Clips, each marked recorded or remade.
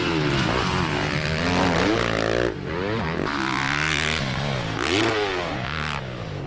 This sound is recorded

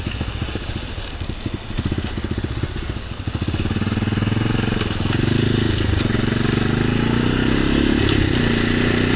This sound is recorded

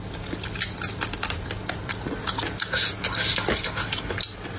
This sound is recorded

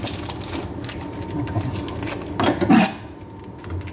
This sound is recorded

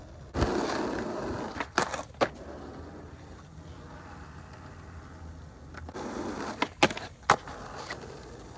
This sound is recorded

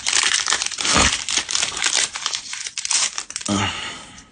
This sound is recorded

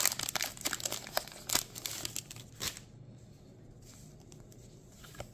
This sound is recorded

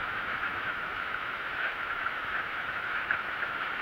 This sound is remade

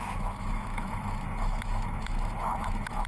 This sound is remade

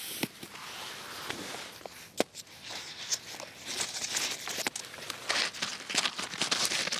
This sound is recorded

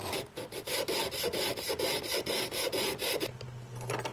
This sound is recorded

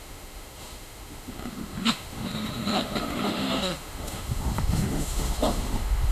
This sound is remade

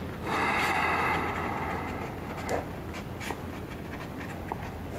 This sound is recorded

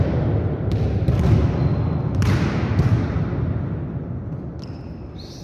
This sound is recorded